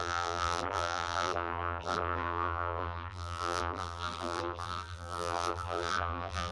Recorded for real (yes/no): no